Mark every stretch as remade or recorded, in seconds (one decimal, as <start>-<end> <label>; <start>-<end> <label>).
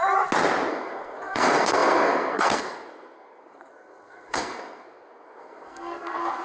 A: 0.0-0.7 recorded; 0.7-6.4 remade